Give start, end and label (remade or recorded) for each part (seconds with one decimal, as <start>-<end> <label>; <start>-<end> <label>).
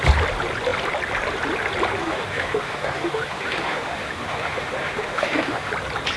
0.0-2.0 recorded; 2.0-5.7 remade; 5.7-6.2 recorded